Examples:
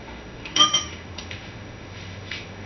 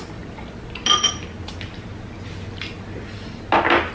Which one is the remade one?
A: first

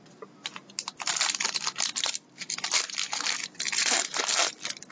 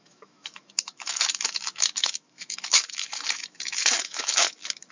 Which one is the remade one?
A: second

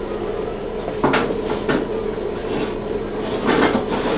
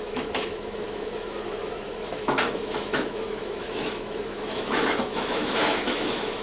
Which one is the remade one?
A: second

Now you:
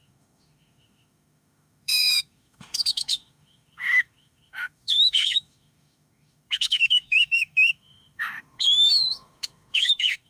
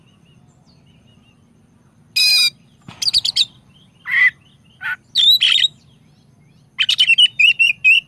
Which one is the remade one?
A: first